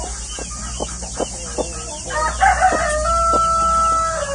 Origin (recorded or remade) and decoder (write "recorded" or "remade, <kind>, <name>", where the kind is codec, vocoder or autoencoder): recorded